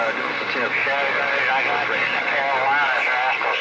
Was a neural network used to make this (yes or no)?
no